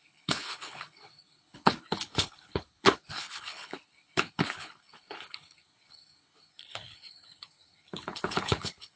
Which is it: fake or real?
fake